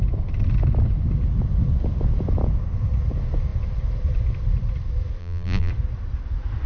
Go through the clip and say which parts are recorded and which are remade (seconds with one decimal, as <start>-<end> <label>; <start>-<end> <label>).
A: 0.0-5.2 recorded; 5.2-5.7 remade; 5.7-6.7 recorded